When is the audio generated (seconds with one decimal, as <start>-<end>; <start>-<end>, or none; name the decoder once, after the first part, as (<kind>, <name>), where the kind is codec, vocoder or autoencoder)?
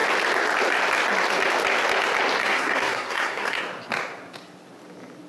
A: 2.4-3.6 (codec, SNAC)